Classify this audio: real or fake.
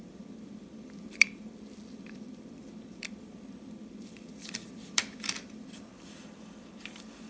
fake